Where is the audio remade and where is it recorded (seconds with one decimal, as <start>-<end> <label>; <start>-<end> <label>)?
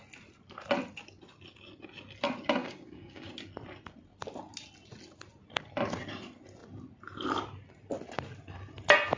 0.0-2.6 recorded; 2.6-3.3 remade; 3.3-9.2 recorded